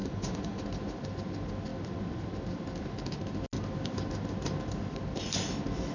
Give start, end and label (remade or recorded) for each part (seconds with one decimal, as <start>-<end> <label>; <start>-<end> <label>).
0.0-0.6 remade; 0.6-5.9 recorded